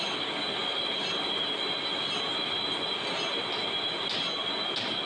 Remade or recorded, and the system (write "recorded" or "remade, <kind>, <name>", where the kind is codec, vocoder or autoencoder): recorded